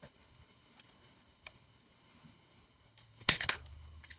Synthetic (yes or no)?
yes